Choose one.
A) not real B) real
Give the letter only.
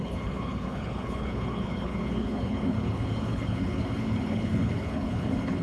A